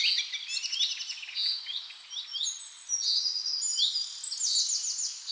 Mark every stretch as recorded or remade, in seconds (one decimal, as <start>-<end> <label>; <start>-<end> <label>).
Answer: 0.0-5.3 recorded